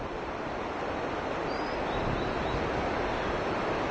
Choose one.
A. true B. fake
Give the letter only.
A